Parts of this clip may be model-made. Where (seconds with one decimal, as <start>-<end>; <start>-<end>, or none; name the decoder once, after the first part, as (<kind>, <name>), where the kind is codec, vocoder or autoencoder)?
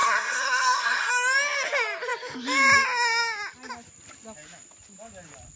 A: 0.0-1.1 (codec, SNAC)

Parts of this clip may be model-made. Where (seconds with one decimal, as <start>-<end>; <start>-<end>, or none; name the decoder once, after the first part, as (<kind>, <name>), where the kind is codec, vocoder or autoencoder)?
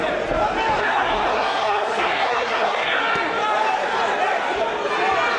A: 0.8-3.0 (codec, SNAC)